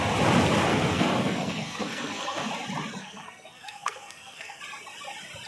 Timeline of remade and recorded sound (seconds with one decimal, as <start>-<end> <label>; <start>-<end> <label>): 0.0-0.7 recorded; 0.7-2.5 remade; 2.5-3.0 recorded; 3.0-4.6 remade; 4.6-5.5 recorded